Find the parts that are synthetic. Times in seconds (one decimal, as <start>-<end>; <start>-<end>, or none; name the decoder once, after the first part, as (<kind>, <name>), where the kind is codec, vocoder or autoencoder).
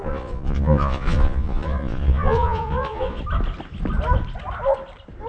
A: 0.0-3.2 (vocoder, Vocos)